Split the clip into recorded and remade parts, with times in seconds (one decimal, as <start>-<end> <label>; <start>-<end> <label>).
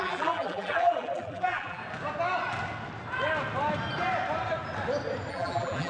0.0-1.8 remade; 1.8-5.3 recorded; 5.3-5.9 remade